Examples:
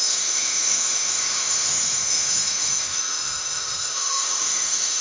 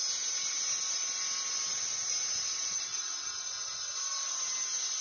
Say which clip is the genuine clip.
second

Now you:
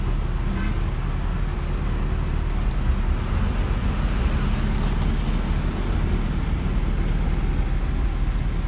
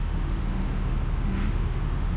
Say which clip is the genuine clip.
first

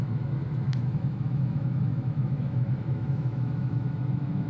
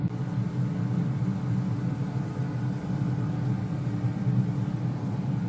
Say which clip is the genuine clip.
second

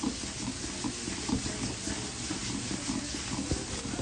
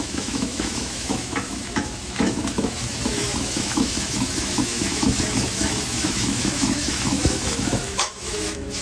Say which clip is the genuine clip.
first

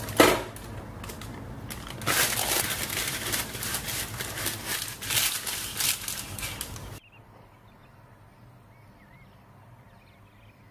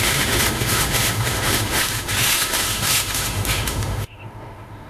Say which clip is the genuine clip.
first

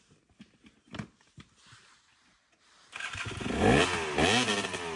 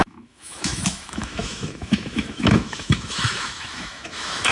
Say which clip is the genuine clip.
first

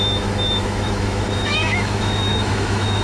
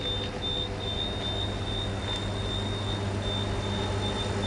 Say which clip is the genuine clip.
second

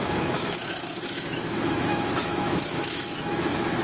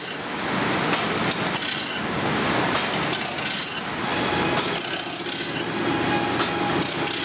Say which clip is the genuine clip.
second